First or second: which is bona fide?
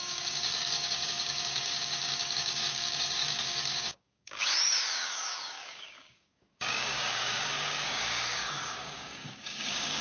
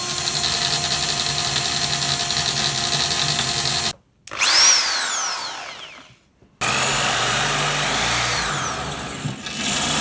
second